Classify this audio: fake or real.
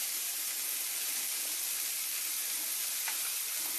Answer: real